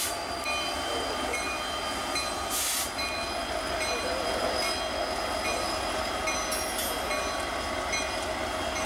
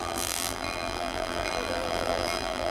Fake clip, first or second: second